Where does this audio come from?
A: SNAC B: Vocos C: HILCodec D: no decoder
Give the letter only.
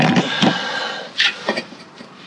D